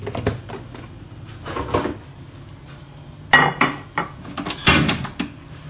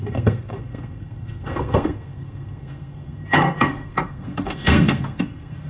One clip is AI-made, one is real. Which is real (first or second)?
first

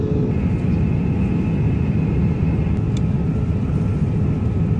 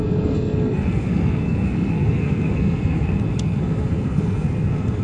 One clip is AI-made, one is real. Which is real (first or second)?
first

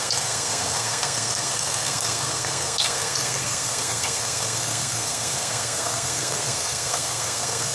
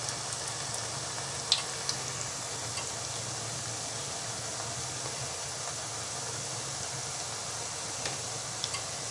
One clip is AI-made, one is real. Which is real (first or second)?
second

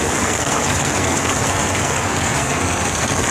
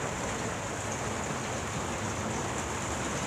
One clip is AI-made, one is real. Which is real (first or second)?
second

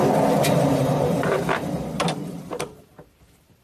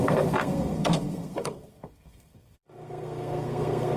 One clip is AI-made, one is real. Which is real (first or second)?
first